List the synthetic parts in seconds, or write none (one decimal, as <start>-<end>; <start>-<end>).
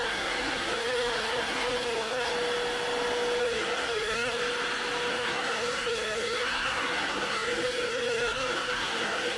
0.0-2.3; 3.4-4.4; 5.1-9.4